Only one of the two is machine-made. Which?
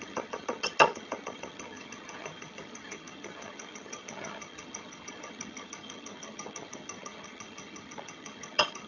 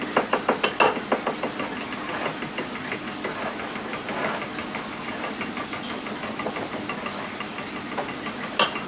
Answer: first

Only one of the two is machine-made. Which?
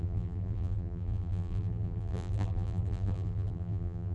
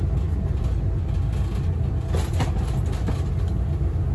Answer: first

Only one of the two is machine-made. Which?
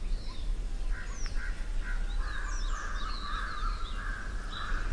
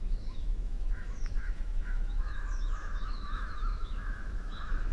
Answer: second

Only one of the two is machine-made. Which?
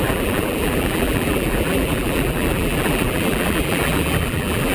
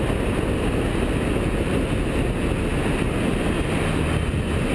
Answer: first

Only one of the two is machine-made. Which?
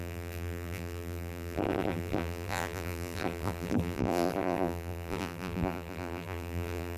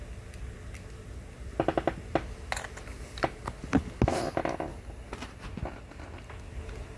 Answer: first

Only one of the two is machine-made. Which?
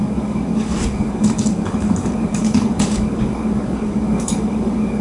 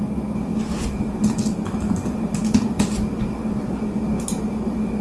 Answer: first